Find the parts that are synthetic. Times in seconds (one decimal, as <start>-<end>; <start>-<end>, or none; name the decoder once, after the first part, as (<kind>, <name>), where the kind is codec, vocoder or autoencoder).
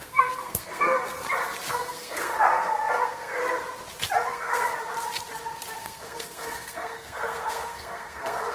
0.0-1.2 (codec, SNAC); 1.7-3.4; 4.3-4.7; 5.8-8.5